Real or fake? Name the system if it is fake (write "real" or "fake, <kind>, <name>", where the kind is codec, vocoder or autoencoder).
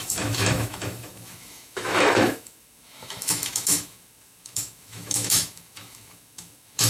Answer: fake, autoencoder, DAC-VAE